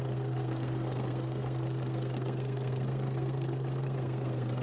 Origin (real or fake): fake